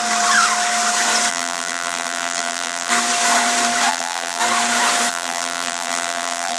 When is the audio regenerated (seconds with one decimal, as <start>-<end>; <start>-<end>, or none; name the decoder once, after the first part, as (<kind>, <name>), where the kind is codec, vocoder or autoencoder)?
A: 1.3-2.9 (vocoder, BigVGAN v2); 3.9-4.4; 5.1-6.6